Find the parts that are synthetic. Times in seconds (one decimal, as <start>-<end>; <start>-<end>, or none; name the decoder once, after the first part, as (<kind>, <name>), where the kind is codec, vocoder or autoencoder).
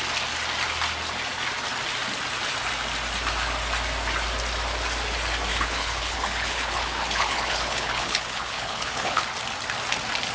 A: 5.5-9.2 (codec, HILCodec)